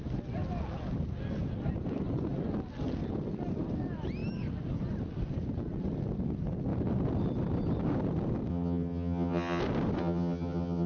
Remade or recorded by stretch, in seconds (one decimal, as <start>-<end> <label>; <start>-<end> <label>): 0.0-8.5 recorded; 8.5-9.6 remade; 9.6-10.0 recorded; 10.0-10.9 remade